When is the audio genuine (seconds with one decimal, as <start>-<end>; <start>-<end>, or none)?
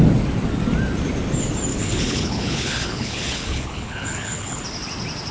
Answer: 0.0-1.7; 4.6-5.3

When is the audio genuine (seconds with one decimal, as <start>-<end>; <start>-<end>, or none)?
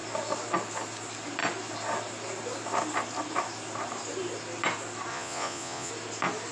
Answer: 0.0-5.1; 5.9-6.5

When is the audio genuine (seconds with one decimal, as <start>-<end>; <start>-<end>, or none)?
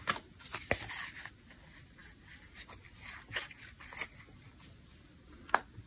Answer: 0.0-5.9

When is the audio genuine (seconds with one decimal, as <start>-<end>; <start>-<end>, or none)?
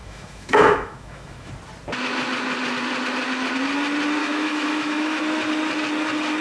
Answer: 1.5-4.2; 5.2-6.4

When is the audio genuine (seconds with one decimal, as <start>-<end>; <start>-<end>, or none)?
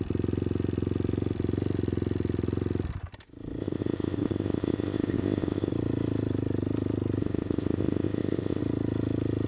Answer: 0.0-3.6; 5.7-7.2; 8.6-9.5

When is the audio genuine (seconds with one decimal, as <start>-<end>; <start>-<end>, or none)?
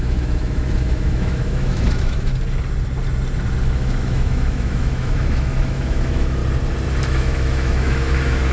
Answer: 2.3-3.6; 6.4-7.0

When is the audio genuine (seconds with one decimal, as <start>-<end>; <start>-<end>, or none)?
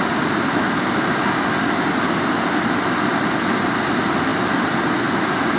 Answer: 0.0-5.6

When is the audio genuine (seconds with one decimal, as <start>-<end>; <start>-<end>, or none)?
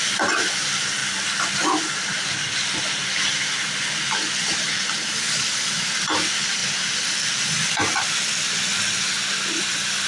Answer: 0.0-10.1